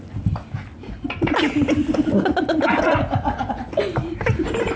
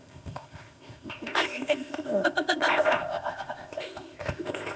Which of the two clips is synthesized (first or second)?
second